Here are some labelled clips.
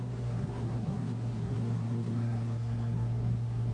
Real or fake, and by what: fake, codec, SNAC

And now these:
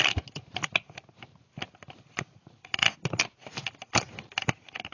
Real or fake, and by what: real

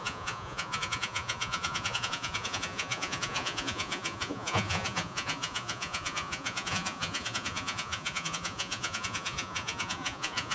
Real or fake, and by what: fake, vocoder, Vocos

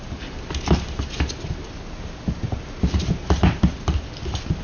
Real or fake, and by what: real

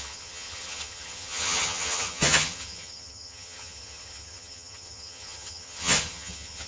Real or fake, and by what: fake, vocoder, HiFi-GAN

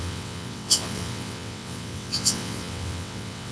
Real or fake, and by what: fake, vocoder, WaveNeXt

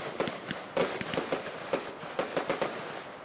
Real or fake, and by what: real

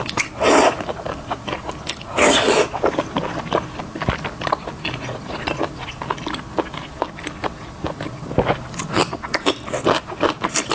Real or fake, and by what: real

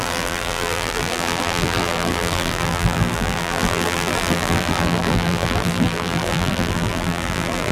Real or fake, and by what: fake, vocoder, BigVGAN v2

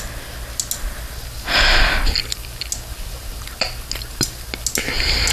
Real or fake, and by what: real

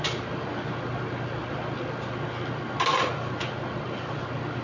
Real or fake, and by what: real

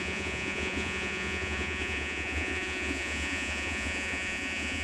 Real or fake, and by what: fake, vocoder, Vocos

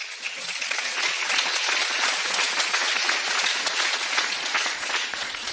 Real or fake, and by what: fake, vocoder, Vocos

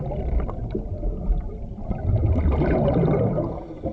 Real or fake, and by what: real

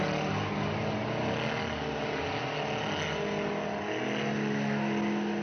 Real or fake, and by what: real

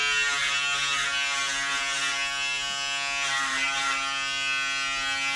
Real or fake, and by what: real